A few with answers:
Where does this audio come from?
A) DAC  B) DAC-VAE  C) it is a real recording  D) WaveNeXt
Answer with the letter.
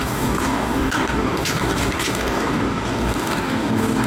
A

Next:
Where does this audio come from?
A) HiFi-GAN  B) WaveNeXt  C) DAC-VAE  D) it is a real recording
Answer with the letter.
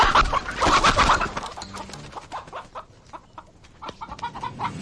D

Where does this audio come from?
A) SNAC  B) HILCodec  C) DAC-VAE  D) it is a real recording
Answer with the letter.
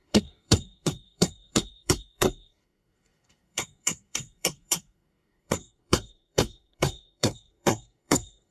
A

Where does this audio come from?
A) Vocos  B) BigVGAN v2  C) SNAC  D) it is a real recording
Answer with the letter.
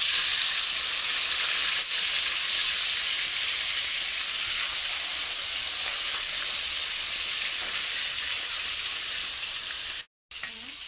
D